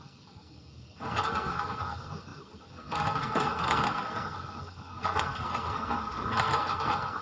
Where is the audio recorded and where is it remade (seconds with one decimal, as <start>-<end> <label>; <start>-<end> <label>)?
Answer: 0.0-7.2 remade